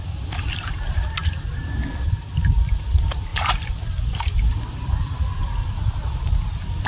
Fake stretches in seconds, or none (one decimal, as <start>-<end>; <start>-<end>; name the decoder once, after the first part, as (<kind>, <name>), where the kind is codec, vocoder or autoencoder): none